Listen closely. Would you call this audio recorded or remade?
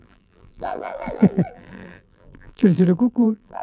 remade